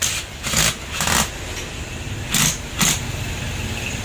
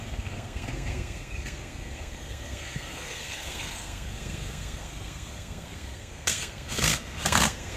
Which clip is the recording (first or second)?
first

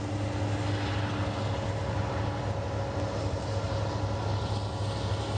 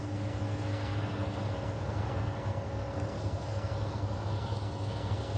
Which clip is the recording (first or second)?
first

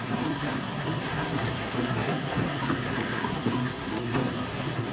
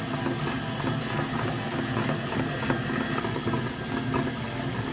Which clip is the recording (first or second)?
second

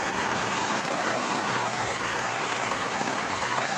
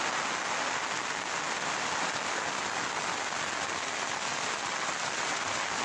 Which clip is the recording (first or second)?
second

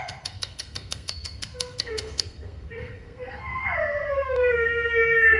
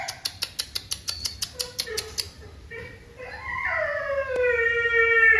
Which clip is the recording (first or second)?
second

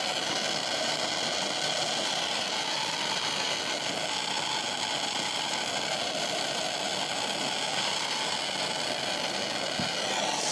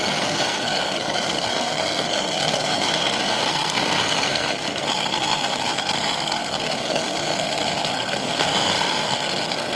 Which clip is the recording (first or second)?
first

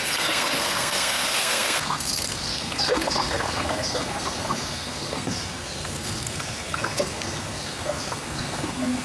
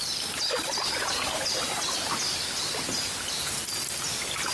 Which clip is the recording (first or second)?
second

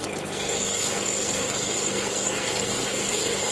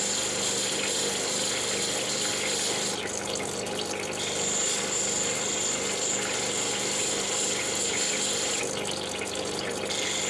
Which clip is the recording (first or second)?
second